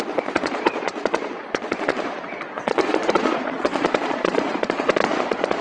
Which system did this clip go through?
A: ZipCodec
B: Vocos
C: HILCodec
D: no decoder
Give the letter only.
B